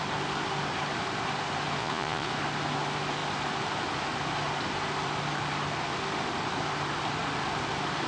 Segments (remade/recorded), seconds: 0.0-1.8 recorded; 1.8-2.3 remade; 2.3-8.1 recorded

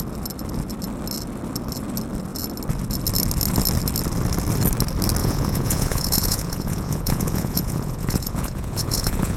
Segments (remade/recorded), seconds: 0.0-5.2 recorded; 5.2-9.4 remade